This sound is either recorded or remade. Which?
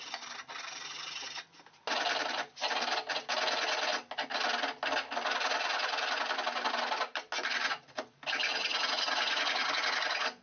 recorded